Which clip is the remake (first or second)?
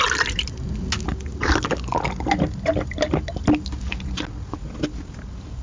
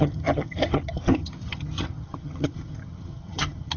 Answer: second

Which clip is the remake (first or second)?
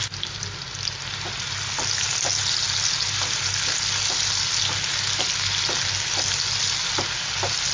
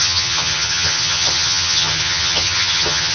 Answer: second